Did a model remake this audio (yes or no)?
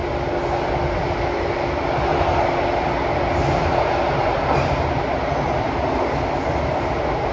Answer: no